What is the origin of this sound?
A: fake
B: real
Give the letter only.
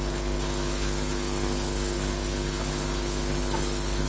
A